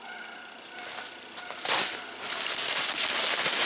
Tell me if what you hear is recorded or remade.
recorded